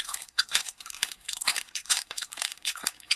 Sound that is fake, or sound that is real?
fake